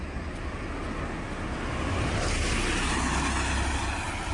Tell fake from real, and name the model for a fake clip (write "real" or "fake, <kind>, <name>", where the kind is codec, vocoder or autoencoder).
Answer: real